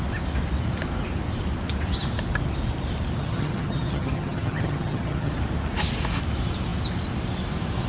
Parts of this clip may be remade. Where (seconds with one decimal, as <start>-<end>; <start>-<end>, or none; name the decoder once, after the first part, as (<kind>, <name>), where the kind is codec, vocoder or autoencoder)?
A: 3.2-5.3 (vocoder, HiFi-GAN)